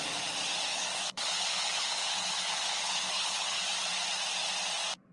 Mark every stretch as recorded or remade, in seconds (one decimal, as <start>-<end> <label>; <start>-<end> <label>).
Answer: 0.0-0.7 recorded; 0.7-3.6 remade; 3.6-5.1 recorded